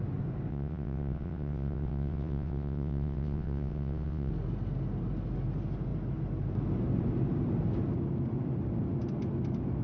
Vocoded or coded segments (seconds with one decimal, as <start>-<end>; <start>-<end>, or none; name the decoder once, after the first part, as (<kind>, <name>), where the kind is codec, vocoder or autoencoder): 0.5-4.3 (vocoder, WaveNeXt)